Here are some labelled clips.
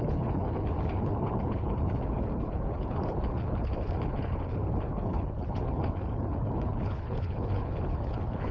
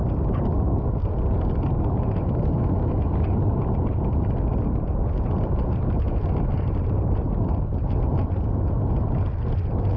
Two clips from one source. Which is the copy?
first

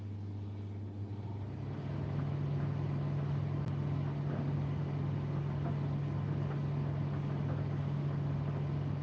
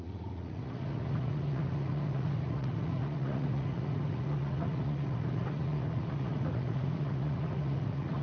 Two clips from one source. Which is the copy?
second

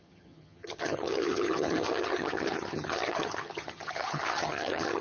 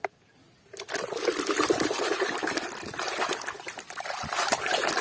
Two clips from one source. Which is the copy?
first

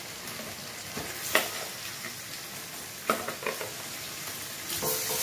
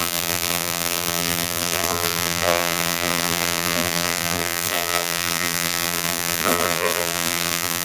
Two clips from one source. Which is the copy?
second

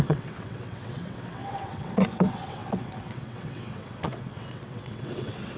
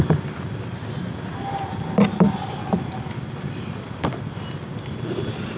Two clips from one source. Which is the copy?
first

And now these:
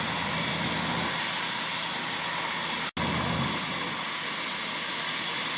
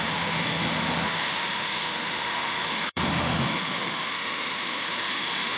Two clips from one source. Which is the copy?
second